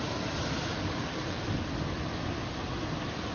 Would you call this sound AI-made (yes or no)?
no